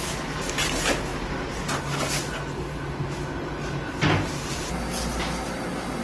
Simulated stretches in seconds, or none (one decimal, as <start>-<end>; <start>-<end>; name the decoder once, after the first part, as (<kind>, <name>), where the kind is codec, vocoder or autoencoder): none